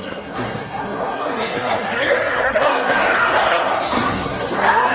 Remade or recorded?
remade